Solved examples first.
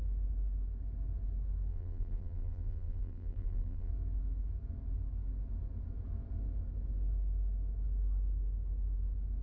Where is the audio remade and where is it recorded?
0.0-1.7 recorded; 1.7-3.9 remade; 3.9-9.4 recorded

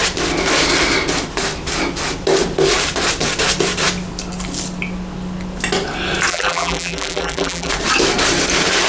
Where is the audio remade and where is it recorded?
0.0-6.3 recorded; 6.3-7.7 remade; 7.7-8.9 recorded

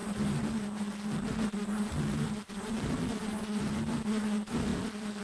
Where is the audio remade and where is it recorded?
0.0-4.7 recorded; 4.7-5.2 remade